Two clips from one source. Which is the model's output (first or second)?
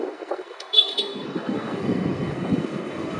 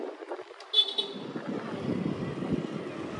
first